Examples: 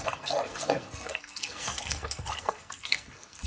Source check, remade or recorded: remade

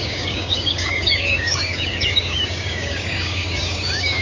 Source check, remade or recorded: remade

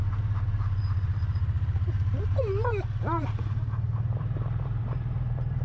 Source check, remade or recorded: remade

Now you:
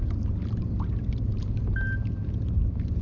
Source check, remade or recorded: recorded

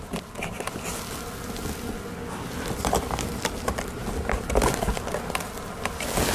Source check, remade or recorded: recorded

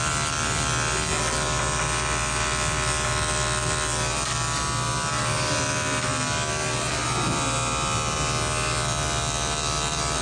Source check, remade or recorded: recorded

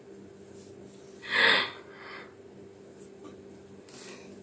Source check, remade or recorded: recorded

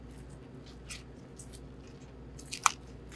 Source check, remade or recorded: recorded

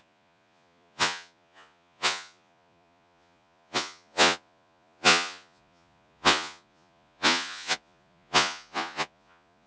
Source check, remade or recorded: remade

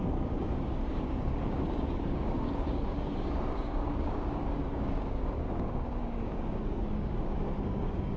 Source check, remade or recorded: remade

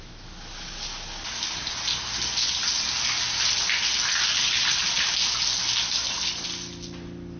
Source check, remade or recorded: recorded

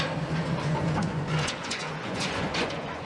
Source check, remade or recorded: remade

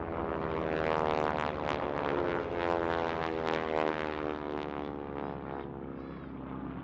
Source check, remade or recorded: recorded